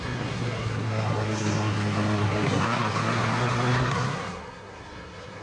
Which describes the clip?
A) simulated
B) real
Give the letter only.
A